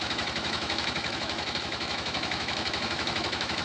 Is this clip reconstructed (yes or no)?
yes